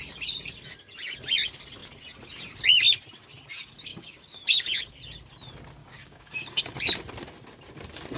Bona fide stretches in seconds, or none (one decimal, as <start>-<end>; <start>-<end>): 0.0-3.9; 4.9-5.8; 6.6-8.2

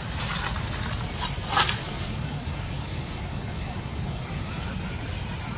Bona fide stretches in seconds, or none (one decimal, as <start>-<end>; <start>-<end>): 0.0-1.8; 4.6-5.6

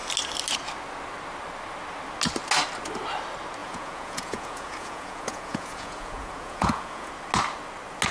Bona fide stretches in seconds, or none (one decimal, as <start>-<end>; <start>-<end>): 0.0-3.6; 7.1-8.1

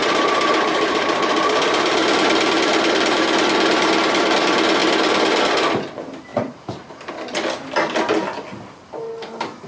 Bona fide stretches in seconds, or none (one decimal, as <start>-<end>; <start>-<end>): 1.4-6.3; 7.1-9.7

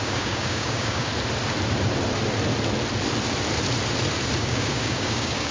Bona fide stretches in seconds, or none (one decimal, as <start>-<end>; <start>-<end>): 1.1-4.4

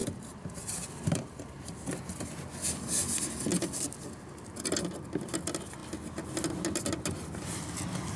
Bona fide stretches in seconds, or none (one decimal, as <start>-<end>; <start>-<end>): 0.0-8.2

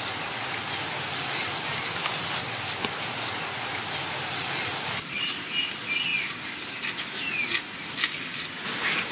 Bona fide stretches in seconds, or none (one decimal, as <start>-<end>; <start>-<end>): 0.0-9.1